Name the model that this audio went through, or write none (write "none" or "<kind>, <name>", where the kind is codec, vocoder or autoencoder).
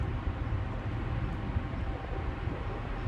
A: none